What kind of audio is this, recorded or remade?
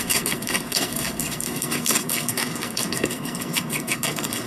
remade